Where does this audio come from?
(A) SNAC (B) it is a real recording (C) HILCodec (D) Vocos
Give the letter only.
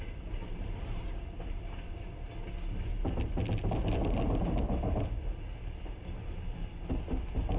B